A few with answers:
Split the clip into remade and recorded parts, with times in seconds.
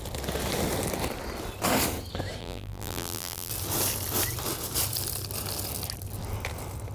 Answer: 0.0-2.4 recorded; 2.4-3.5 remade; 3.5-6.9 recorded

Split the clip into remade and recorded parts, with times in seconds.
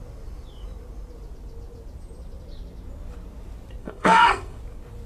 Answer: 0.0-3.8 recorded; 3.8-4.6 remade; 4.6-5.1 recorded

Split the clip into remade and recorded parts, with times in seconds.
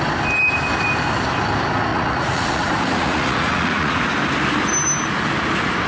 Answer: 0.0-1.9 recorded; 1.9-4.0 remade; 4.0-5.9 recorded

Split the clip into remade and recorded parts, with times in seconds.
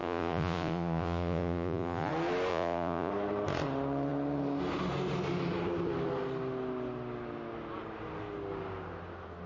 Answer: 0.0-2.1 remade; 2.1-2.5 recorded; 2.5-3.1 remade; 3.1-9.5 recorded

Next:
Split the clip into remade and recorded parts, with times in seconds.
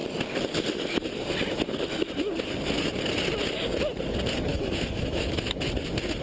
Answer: 0.0-4.5 recorded; 4.5-5.6 remade; 5.6-6.2 recorded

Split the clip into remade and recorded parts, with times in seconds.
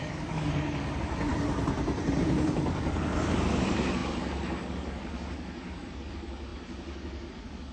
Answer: 0.0-1.3 remade; 1.3-2.2 recorded; 2.2-7.7 remade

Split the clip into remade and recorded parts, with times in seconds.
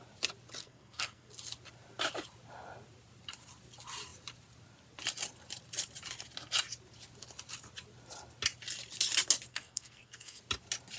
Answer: 0.0-0.6 recorded; 0.6-1.3 remade; 1.3-9.5 recorded; 9.5-10.4 remade; 10.4-11.0 recorded